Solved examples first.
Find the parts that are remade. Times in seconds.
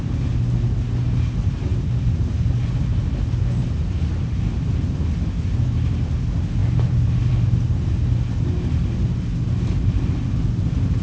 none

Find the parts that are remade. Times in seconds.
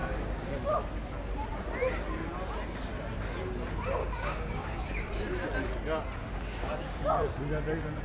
0.0-0.7 (codec, DAC); 4.0-4.9; 6.2-7.0